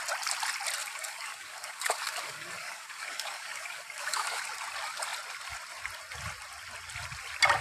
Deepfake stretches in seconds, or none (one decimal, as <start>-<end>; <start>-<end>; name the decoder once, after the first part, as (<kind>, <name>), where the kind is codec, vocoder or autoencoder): 0.8-4.4 (codec, DAC)